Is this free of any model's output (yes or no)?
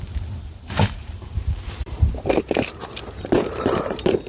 no